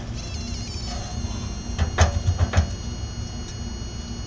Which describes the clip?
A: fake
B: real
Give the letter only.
B